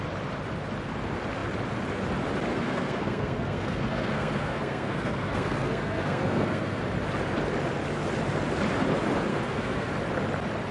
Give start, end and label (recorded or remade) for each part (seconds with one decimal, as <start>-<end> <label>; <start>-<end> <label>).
0.0-2.5 recorded; 2.5-6.8 remade; 6.8-9.3 recorded; 9.3-9.9 remade; 9.9-10.7 recorded